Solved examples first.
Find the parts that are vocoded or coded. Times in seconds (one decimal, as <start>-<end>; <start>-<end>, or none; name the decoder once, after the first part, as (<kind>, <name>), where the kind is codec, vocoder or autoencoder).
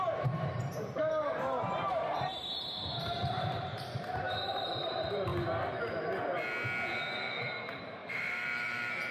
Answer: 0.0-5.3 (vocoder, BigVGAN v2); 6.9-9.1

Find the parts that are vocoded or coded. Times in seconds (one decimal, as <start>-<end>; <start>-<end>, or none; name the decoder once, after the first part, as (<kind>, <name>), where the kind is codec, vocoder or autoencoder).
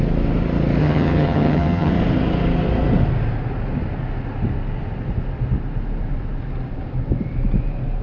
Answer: 0.8-1.9 (vocoder, HiFi-GAN)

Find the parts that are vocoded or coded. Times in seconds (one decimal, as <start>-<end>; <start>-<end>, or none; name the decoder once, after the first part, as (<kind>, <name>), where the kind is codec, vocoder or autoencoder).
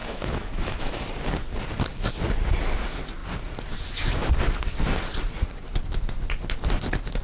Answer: 0.0-1.0 (autoencoder, DAC-VAE)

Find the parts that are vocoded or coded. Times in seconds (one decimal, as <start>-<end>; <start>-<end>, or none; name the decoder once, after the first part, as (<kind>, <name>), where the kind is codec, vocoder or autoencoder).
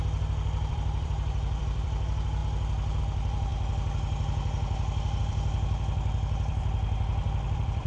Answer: 0.0-2.4 (vocoder, BigVGAN v2); 3.0-3.5; 5.2-7.9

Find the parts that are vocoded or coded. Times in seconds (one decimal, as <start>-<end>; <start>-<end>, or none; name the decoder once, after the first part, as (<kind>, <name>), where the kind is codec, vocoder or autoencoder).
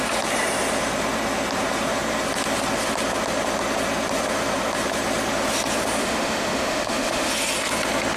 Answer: 6.0-7.3 (autoencoder, DAC-VAE)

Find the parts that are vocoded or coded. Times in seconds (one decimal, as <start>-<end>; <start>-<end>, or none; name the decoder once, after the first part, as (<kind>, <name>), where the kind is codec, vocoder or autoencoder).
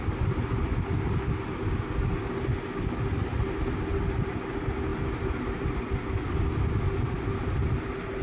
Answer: none